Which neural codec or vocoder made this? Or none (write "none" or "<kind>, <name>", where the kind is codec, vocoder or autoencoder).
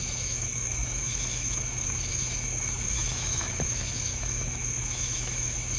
autoencoder, DAC-VAE